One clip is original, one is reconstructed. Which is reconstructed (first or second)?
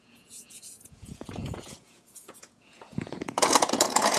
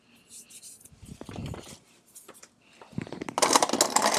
first